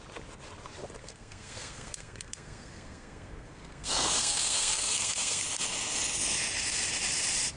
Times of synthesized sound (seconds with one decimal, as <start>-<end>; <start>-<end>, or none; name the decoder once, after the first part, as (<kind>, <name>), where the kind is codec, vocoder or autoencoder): 1.0-5.4 (codec, SNAC)